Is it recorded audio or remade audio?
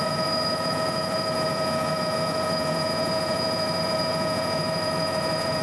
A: remade